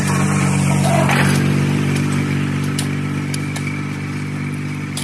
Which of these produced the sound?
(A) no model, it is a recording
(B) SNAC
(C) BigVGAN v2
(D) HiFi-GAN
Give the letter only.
A